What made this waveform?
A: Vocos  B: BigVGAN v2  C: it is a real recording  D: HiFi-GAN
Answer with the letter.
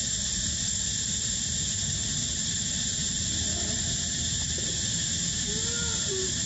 C